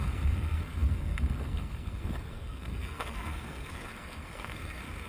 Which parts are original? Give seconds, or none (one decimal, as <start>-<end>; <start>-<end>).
none